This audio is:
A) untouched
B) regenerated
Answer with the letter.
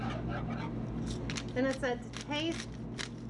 A